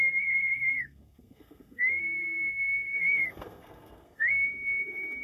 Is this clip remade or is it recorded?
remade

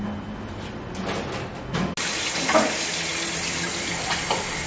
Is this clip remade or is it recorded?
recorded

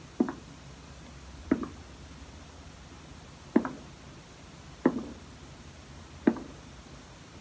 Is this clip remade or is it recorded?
recorded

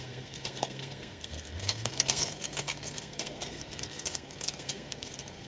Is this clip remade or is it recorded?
remade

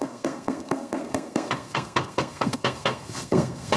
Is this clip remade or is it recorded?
remade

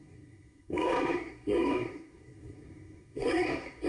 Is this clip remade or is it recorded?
remade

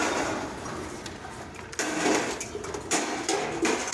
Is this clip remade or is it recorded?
recorded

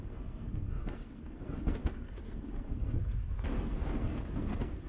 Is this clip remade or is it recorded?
remade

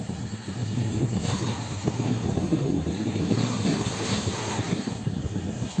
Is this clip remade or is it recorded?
remade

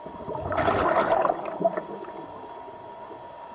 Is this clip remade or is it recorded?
recorded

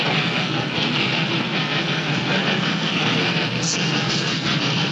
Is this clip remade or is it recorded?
remade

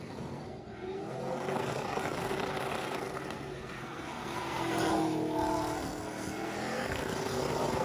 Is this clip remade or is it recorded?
remade